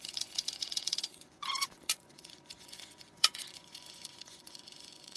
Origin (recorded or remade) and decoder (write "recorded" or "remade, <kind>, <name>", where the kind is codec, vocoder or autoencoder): remade, vocoder, Vocos